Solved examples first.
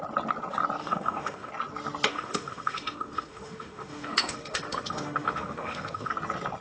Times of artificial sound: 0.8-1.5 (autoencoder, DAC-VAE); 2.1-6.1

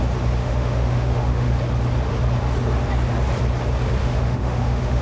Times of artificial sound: 0.4-1.5 (autoencoder, DAC-VAE); 4.0-5.0

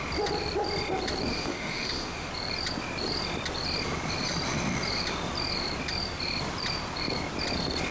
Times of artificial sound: 1.3-2.3 (autoencoder, DAC-VAE)